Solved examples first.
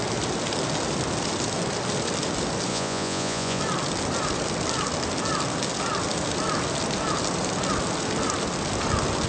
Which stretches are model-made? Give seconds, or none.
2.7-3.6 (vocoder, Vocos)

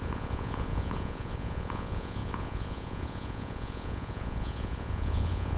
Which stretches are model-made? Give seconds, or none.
0.0-5.6 (vocoder, Vocos)

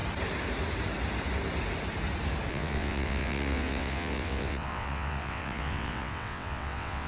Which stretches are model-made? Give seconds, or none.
2.5-7.1 (vocoder, WaveNeXt)